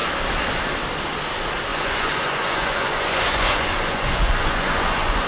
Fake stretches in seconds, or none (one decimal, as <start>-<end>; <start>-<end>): 1.7-5.3